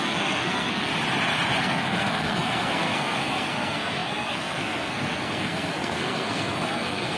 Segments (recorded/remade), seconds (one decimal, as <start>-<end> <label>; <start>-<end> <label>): 0.0-0.9 remade; 0.9-1.6 recorded; 1.6-7.2 remade